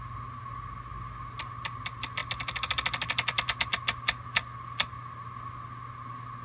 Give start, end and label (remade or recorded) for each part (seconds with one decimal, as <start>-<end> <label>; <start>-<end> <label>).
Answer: 0.0-6.4 recorded